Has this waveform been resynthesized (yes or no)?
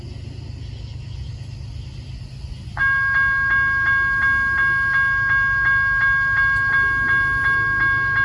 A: no